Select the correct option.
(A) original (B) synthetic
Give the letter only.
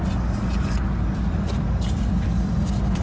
B